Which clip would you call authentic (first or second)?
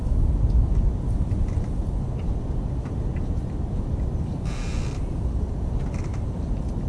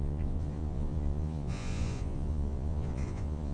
first